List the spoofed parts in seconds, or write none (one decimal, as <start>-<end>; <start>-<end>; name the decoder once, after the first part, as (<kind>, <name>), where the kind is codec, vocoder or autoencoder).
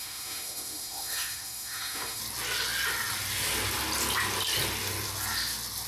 0.0-2.2 (autoencoder, DAC-VAE)